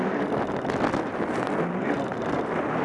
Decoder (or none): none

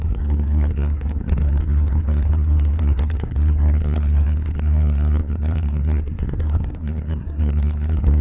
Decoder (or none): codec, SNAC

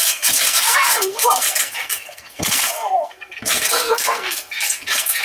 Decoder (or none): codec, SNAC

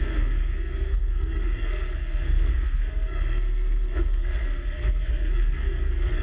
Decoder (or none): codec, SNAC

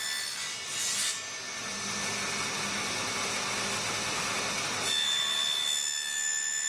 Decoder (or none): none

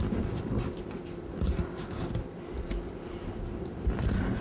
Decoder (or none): none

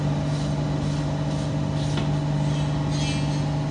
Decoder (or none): none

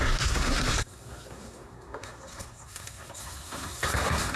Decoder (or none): codec, SNAC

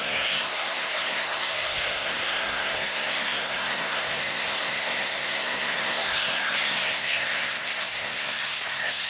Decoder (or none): codec, SNAC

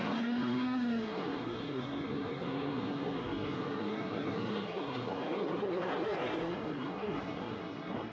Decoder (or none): codec, SNAC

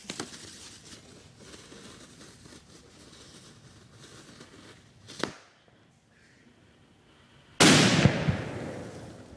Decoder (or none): none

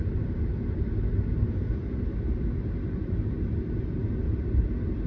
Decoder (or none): none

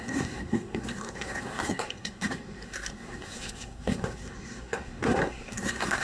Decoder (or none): codec, SNAC